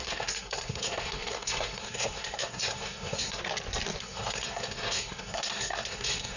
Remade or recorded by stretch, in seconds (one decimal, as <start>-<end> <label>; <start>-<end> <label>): 0.0-3.4 remade; 3.4-4.0 recorded; 4.0-6.4 remade